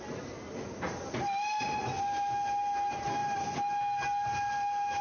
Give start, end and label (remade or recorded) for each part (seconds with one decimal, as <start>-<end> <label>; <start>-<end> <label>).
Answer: 0.0-5.0 recorded